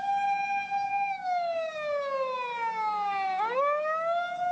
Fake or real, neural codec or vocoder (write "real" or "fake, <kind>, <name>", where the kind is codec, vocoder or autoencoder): fake, codec, DAC